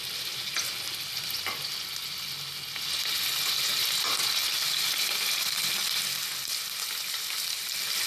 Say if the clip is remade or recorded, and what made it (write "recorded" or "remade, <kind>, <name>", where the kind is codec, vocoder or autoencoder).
recorded